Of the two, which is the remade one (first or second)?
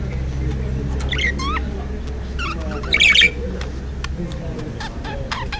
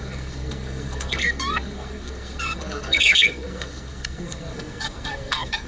second